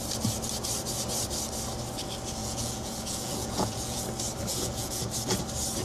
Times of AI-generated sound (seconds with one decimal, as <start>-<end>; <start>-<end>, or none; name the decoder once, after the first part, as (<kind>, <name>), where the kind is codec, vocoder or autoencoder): 2.4-4.0 (vocoder, Vocos); 4.5-5.0